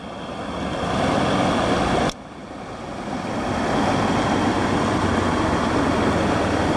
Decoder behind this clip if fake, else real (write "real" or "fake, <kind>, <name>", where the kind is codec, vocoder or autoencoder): real